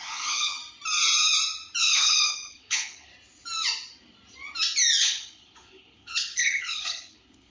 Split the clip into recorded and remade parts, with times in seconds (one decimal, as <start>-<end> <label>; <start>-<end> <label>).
0.0-0.6 remade; 0.6-1.8 recorded; 1.8-3.1 remade; 3.1-5.0 recorded; 5.0-7.5 remade